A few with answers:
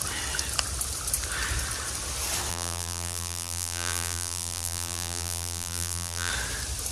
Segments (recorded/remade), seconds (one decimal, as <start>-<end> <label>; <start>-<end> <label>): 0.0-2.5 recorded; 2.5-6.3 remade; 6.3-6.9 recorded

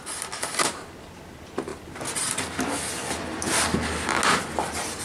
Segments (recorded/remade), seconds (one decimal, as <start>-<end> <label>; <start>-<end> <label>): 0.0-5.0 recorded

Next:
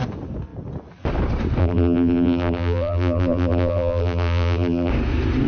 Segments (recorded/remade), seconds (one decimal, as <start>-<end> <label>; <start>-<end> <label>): 0.0-1.6 recorded; 1.6-4.9 remade; 4.9-5.5 recorded